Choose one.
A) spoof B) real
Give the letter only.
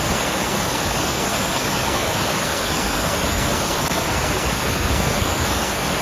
A